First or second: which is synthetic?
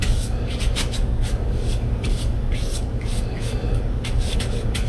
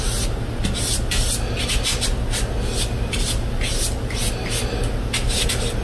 first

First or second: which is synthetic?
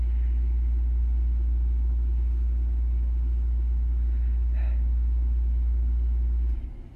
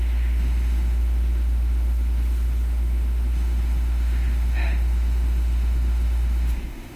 second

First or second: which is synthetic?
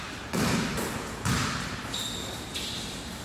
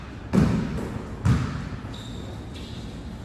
first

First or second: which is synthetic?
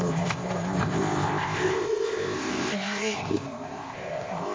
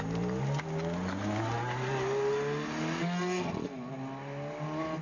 first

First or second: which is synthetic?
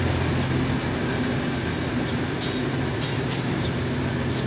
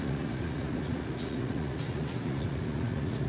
second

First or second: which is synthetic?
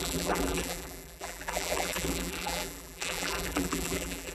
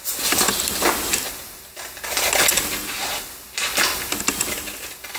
first